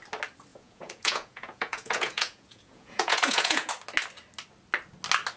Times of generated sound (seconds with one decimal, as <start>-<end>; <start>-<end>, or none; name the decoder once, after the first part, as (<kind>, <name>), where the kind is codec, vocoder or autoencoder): 0.5-3.7 (vocoder, Vocos)